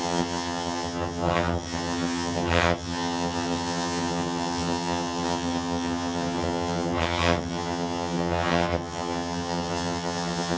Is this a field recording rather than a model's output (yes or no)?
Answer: no